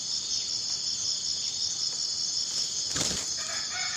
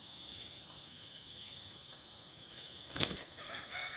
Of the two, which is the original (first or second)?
first